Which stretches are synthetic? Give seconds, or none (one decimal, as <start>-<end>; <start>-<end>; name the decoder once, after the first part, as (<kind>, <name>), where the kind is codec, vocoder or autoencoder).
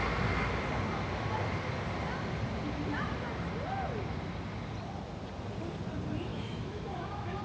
6.3-7.4 (autoencoder, DAC-VAE)